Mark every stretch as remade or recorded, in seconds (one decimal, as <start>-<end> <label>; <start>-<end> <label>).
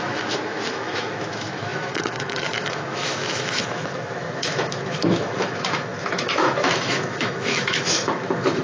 0.0-8.6 remade